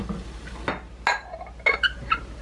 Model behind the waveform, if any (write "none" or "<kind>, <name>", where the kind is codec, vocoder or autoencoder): none